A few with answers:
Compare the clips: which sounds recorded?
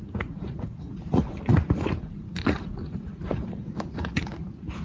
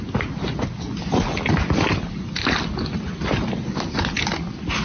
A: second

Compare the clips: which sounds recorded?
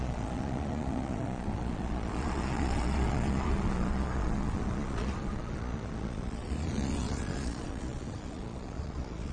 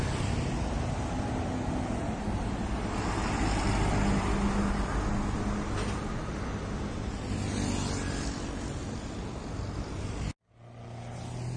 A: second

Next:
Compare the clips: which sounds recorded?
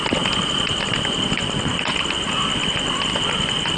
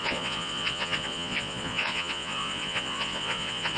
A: first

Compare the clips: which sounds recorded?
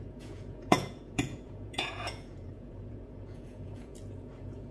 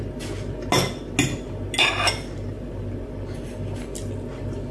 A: second